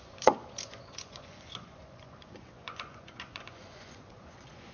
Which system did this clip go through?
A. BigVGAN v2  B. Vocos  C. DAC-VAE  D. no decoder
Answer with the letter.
B